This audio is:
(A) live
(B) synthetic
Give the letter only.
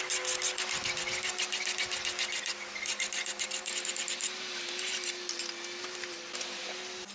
A